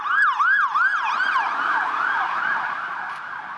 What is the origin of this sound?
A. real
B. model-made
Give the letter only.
A